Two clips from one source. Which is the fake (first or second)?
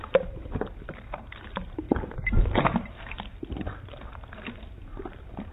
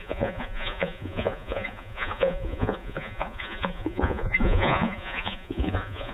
second